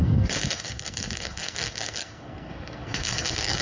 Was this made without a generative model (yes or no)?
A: no